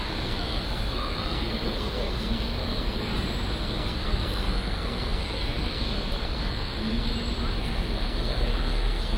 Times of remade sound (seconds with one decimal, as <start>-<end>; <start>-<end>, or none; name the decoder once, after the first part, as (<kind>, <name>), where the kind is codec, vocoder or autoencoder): 0.0-3.1 (codec, SNAC); 3.6-7.1; 7.6-9.2